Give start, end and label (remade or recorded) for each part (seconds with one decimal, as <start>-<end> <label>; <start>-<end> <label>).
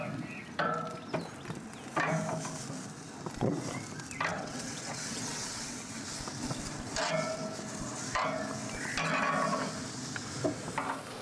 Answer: 0.0-4.3 recorded; 4.3-6.0 remade; 6.0-11.2 recorded